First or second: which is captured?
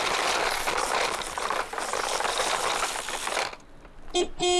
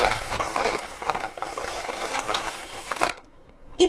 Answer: first